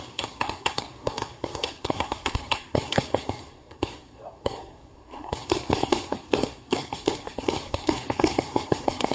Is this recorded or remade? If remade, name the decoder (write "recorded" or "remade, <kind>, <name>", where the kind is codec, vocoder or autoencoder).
remade, codec, SNAC